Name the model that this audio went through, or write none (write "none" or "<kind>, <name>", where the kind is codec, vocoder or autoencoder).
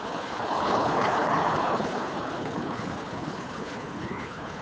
codec, HILCodec